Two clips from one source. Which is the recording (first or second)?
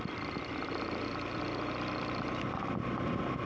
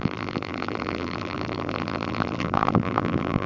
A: first